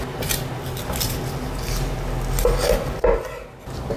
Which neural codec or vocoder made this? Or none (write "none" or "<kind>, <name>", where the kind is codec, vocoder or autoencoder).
none